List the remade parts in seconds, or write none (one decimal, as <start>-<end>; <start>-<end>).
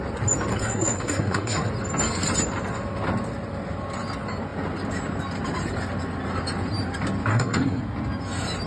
0.5-1.7; 7.3-7.8